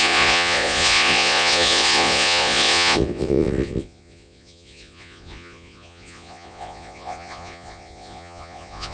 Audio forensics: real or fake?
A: fake